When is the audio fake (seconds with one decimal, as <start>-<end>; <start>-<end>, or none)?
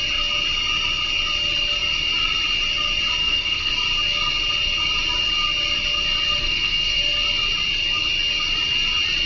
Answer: 3.2-3.7; 6.4-7.0